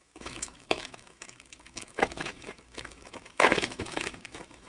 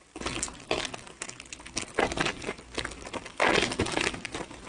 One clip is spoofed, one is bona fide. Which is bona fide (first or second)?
second